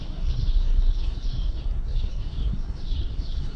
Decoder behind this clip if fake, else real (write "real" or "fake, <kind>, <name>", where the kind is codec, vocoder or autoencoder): fake, codec, SNAC